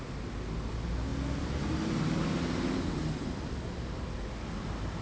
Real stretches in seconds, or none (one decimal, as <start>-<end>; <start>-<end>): 0.0-5.0